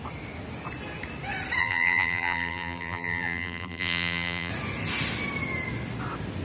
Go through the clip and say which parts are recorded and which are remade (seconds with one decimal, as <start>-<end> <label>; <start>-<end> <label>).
0.0-1.6 recorded; 1.6-4.5 remade; 4.5-6.4 recorded